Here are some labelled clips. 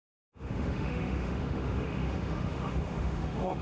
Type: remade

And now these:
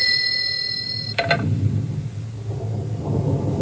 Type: recorded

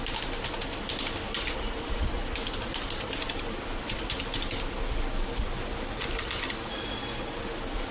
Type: recorded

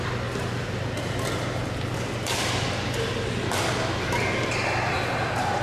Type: recorded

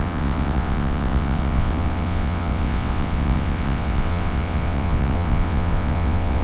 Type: remade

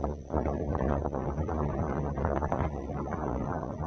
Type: remade